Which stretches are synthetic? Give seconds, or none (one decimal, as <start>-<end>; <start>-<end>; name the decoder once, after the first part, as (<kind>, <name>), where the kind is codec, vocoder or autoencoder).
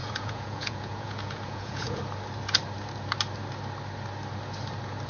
0.0-2.0 (vocoder, Vocos)